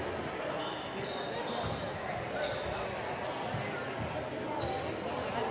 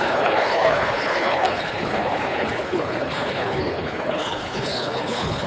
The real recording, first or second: first